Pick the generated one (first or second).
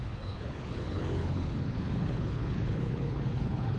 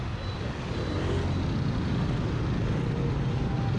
first